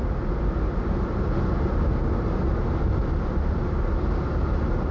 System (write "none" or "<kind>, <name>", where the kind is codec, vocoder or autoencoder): none